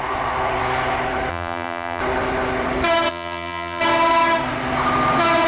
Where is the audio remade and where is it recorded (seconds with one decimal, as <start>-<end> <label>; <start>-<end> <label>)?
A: 0.0-1.3 recorded; 1.3-2.0 remade; 2.0-3.1 recorded; 3.1-3.8 remade; 3.8-5.5 recorded